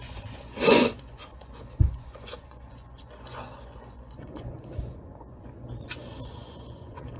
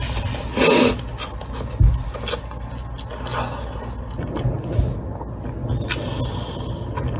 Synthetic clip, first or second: first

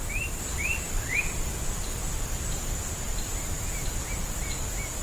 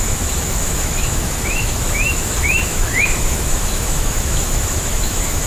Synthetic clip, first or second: second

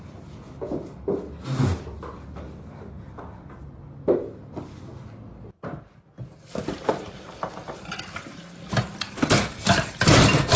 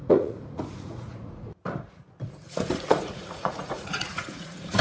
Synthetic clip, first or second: second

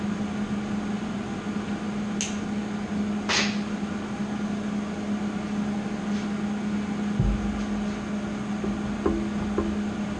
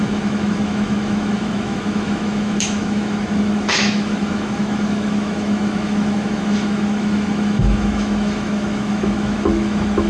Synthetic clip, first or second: second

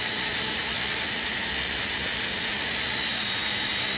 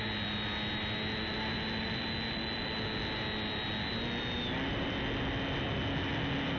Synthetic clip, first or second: first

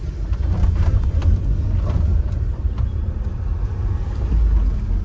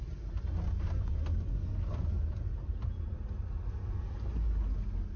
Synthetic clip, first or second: first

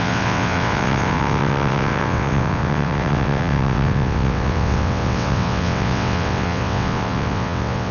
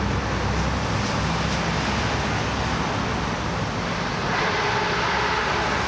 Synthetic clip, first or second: first